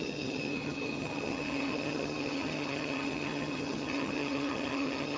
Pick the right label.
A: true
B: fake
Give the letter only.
B